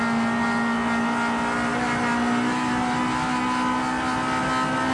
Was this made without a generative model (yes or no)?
yes